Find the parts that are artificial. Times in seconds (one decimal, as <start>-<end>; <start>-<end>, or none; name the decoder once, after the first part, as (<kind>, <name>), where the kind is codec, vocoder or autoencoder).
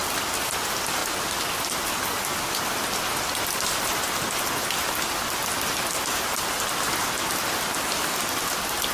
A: 1.0-1.5 (vocoder, BigVGAN v2)